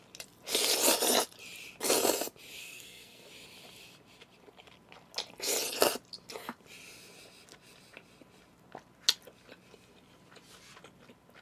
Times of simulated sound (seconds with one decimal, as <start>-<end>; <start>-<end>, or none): 2.6-3.3